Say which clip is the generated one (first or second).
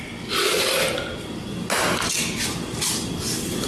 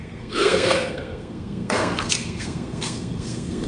second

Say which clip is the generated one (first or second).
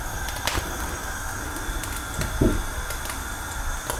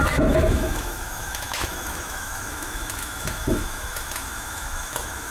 second